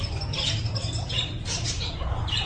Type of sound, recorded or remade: recorded